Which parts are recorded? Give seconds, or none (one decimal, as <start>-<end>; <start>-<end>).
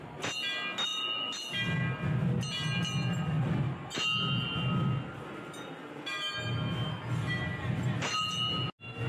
0.0-9.1